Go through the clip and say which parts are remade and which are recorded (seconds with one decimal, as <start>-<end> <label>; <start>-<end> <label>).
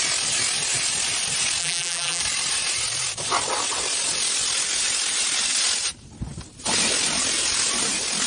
0.0-1.6 recorded; 1.6-2.2 remade; 2.2-8.3 recorded